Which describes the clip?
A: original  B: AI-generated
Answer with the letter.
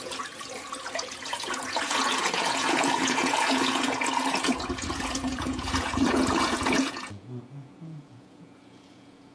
B